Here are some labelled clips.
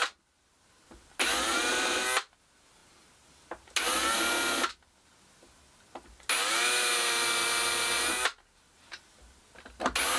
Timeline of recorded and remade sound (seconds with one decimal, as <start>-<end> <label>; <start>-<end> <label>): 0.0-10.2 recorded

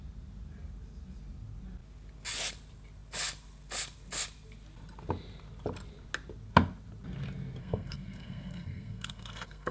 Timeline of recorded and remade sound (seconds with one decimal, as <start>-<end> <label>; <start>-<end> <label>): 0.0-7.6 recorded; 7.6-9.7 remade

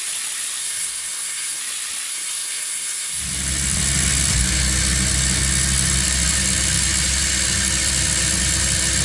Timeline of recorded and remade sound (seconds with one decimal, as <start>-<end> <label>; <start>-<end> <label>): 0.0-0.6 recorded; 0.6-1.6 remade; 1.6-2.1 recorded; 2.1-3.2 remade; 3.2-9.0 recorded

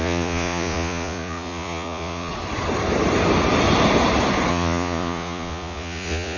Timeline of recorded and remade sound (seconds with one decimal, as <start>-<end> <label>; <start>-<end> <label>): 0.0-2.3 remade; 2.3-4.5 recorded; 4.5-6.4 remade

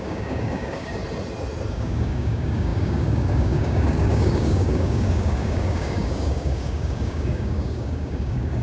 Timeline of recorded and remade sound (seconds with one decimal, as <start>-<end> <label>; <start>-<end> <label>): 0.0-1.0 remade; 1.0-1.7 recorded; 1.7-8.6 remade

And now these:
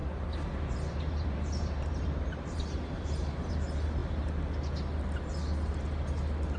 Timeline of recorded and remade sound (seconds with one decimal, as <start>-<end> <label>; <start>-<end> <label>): 0.0-3.5 remade; 3.5-6.6 recorded